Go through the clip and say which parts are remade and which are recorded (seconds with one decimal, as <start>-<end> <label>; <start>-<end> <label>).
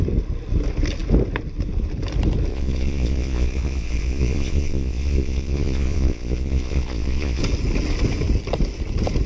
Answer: 0.0-2.5 recorded; 2.5-7.4 remade; 7.4-9.3 recorded